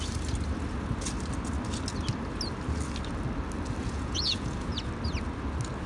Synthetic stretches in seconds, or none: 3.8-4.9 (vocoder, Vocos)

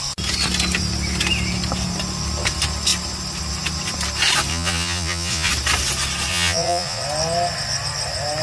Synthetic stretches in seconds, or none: 4.5-5.5 (vocoder, Vocos); 6.3-7.0

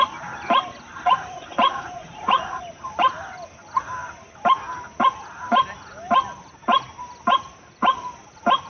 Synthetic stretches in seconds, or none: 0.9-2.6 (vocoder, Vocos)